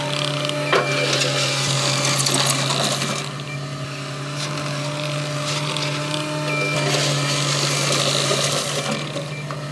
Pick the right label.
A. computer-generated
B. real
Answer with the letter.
B